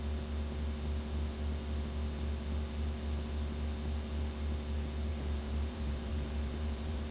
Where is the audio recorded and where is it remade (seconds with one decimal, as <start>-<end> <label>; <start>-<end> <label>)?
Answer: 0.0-5.1 recorded; 5.1-7.1 remade